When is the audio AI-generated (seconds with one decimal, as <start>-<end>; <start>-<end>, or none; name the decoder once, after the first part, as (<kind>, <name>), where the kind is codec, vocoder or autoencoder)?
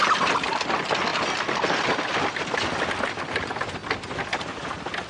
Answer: none